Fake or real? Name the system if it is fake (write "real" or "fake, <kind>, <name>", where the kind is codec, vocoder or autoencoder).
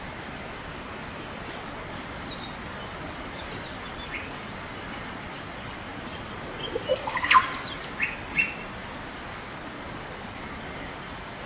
real